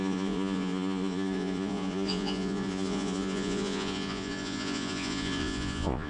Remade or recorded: remade